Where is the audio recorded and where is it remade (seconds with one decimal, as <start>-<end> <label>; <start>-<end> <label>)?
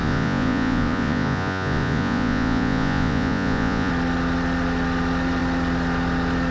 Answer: 0.0-3.9 remade; 3.9-6.5 recorded